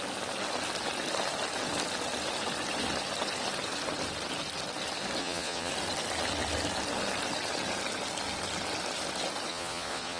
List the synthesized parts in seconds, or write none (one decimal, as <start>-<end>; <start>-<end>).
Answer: 5.2-5.7; 9.5-10.2